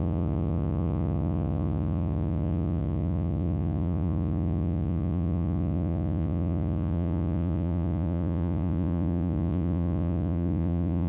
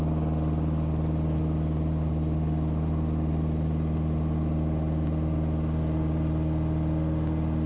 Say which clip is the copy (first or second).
first